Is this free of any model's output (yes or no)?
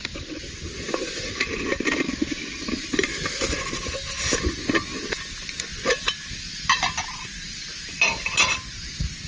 yes